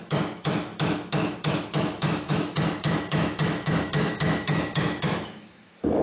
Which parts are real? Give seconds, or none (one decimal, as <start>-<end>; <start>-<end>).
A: none